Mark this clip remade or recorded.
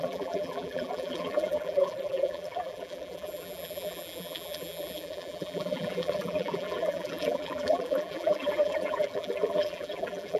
remade